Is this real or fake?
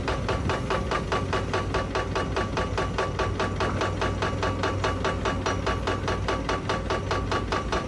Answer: real